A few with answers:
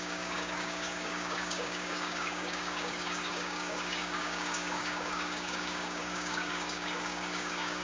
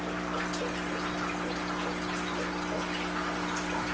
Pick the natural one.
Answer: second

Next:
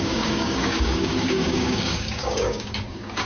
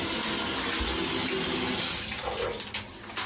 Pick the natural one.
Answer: second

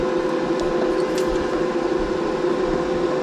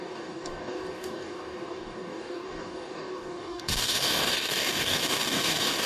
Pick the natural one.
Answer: first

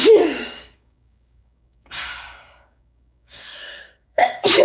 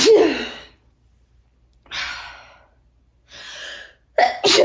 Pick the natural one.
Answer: second